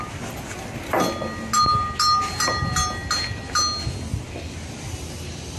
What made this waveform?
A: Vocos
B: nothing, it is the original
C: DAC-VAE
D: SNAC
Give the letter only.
B